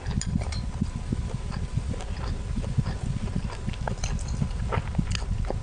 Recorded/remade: recorded